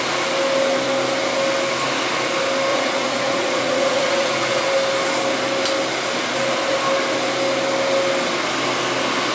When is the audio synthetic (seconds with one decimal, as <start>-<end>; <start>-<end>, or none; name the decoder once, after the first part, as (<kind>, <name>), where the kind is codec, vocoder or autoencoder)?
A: 2.7-4.6 (vocoder, Vocos)